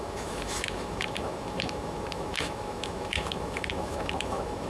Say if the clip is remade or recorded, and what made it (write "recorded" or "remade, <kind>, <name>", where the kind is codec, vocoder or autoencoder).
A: remade, autoencoder, DAC-VAE